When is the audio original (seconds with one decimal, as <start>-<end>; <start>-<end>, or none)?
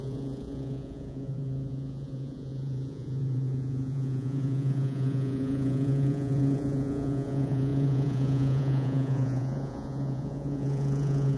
none